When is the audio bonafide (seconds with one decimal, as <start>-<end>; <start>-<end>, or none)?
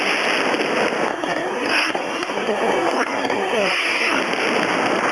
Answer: 0.0-1.1; 4.2-5.1